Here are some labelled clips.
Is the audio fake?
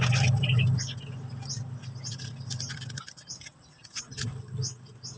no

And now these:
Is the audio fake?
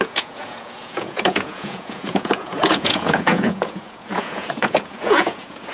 yes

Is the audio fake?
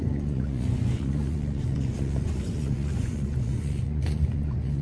yes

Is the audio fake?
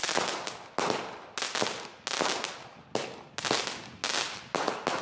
no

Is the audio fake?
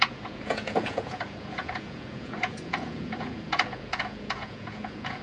yes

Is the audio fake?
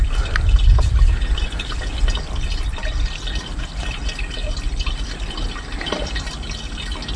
no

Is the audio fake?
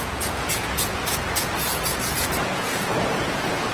yes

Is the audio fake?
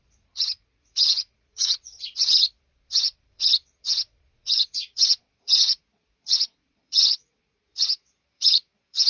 yes